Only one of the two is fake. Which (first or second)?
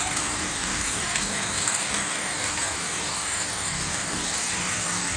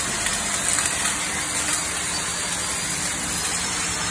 first